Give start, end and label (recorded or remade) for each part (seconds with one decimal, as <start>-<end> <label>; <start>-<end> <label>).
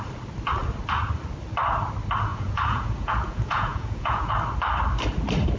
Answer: 0.0-2.3 recorded; 2.3-4.3 remade; 4.3-5.6 recorded